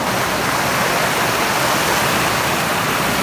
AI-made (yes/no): no